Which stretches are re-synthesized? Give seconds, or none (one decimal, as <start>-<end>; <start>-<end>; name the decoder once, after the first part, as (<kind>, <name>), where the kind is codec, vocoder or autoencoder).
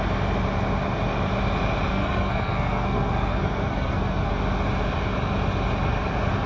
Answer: 1.9-4.3 (codec, SNAC)